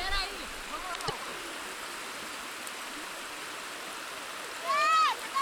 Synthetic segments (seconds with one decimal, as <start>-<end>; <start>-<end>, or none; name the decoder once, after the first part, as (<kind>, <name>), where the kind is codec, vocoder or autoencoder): none